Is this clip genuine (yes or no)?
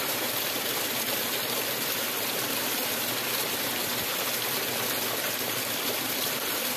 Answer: yes